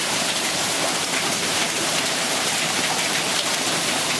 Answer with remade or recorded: remade